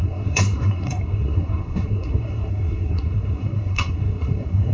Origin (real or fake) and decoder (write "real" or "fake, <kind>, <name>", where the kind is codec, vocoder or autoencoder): fake, codec, SNAC